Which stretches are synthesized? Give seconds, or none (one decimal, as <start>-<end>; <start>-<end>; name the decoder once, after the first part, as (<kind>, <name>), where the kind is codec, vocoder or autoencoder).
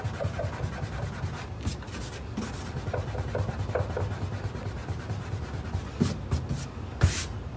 4.8-5.7 (vocoder, BigVGAN v2)